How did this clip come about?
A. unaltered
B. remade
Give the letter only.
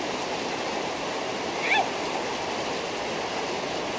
A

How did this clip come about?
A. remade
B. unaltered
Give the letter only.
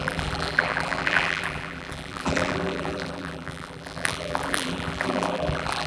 A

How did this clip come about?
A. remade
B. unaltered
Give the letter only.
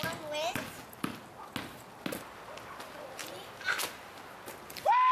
B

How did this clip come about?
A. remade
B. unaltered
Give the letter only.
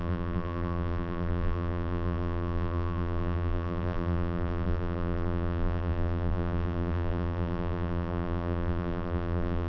A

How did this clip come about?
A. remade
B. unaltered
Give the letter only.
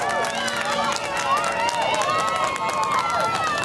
B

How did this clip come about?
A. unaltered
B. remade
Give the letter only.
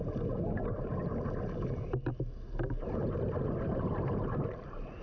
A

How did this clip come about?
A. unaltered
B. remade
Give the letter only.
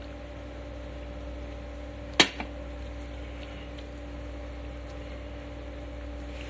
A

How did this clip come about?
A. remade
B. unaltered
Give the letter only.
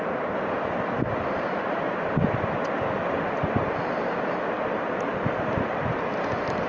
A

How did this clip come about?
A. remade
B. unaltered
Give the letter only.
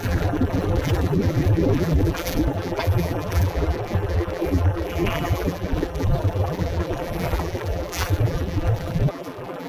A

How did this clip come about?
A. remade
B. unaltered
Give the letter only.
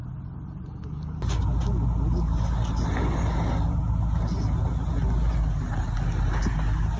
B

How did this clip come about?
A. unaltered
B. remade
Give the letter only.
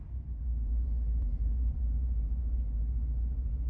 B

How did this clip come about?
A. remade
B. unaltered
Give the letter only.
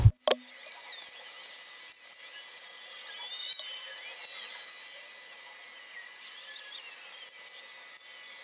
B